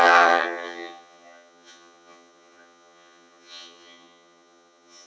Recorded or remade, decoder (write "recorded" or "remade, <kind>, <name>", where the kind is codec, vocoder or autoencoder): remade, vocoder, HiFi-GAN